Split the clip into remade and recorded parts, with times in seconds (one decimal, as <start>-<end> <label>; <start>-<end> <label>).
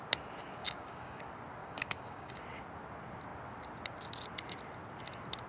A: 0.0-0.6 recorded; 0.6-1.2 remade; 1.2-1.6 recorded; 1.6-2.4 remade; 2.4-5.5 recorded